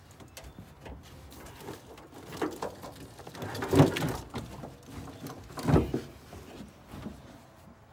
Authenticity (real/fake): real